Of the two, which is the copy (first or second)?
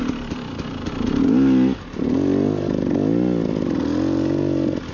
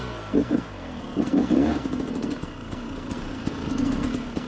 second